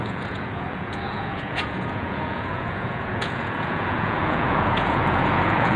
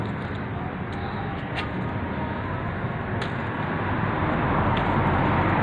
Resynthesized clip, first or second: first